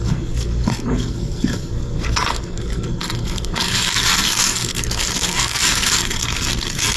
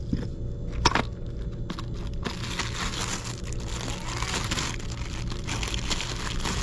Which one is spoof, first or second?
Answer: first